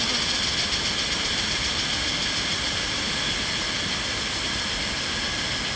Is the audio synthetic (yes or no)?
no